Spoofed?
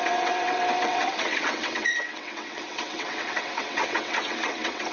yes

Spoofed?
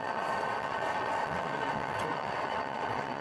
yes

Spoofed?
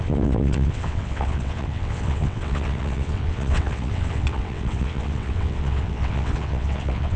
yes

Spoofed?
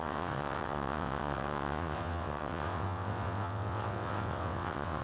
yes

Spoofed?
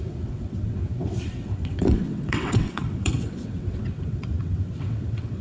yes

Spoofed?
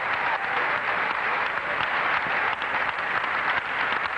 no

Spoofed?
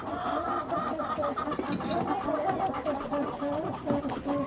no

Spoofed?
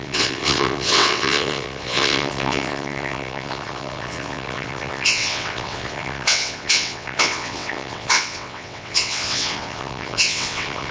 yes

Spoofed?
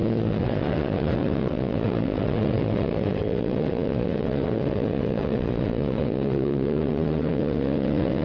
yes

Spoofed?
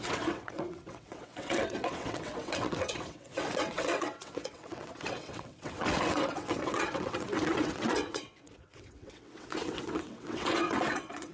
yes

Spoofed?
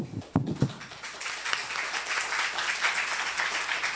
no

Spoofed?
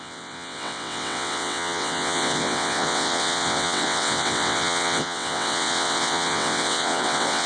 yes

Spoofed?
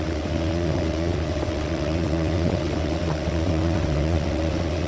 yes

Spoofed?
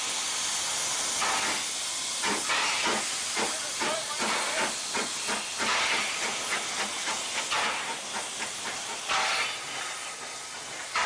no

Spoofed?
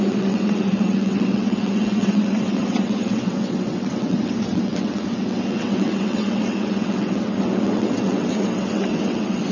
yes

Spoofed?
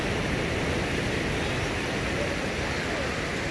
no